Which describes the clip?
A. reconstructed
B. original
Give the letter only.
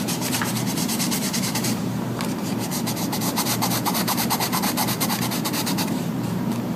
A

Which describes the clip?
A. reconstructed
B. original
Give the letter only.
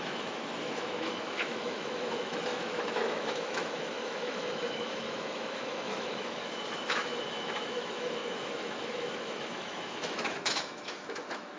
A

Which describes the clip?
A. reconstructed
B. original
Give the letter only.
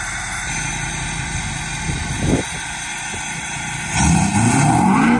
B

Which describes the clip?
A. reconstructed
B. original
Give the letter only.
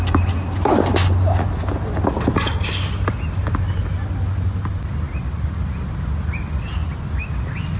B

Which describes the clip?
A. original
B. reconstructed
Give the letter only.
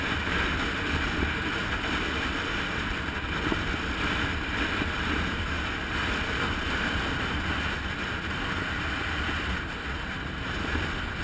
A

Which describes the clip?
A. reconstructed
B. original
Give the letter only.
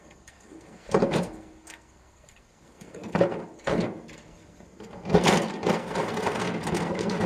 A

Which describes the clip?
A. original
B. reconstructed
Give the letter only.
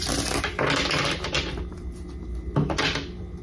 A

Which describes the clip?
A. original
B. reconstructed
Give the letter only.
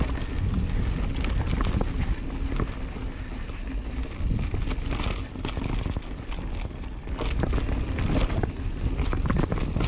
A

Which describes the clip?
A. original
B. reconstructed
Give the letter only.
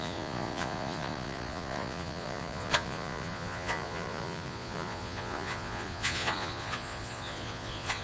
B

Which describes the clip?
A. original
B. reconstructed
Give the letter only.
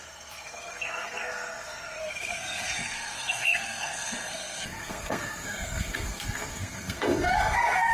B